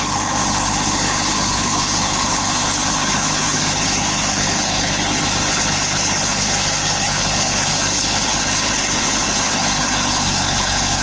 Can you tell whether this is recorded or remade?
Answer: remade